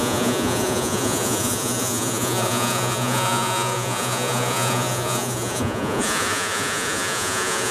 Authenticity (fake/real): fake